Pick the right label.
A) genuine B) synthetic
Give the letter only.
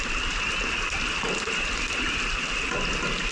A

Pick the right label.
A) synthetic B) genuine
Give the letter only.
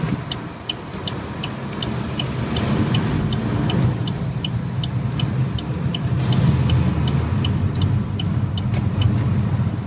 B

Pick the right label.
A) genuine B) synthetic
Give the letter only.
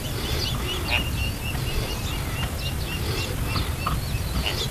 A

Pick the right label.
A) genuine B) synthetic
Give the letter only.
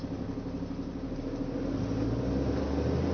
A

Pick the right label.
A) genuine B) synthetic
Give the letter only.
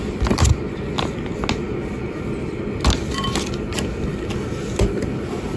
A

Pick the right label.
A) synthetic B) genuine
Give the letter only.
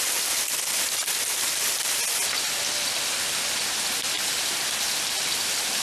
B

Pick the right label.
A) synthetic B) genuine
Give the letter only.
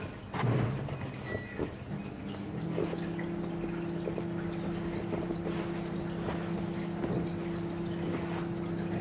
B